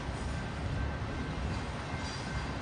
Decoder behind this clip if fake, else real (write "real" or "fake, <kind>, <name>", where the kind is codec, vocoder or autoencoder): real